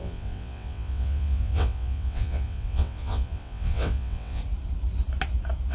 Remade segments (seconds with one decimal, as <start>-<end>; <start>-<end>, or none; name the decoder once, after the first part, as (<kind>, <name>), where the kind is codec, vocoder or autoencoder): 0.0-4.4 (vocoder, WaveNeXt)